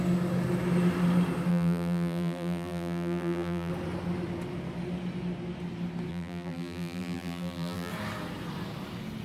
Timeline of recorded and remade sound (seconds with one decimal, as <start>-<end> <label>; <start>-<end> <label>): 0.0-1.5 recorded; 1.5-3.7 remade; 3.7-6.1 recorded; 6.1-7.9 remade; 7.9-9.2 recorded